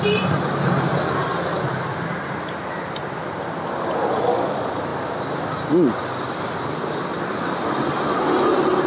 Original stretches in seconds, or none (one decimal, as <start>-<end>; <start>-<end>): 0.0-8.9